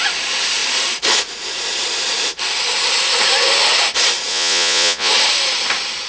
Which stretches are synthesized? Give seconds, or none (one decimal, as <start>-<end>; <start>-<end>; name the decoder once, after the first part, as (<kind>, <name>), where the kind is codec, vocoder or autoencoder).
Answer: 4.3-5.1 (vocoder, Vocos)